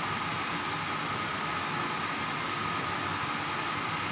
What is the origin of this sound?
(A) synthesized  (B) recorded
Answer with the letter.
B